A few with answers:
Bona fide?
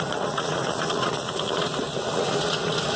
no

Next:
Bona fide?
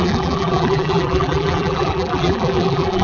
no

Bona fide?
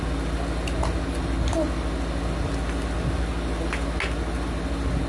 yes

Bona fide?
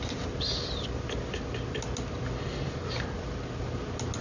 yes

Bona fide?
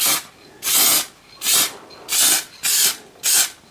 yes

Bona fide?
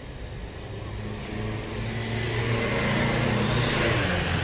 yes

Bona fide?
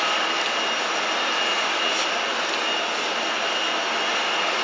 yes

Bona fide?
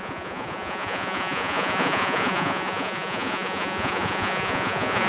no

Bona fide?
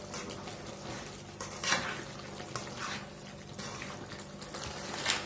yes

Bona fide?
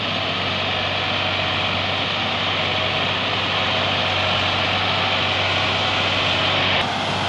yes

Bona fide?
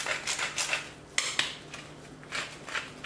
yes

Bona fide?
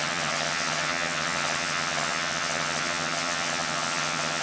no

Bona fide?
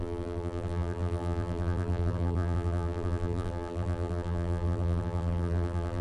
no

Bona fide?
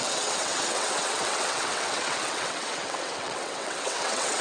no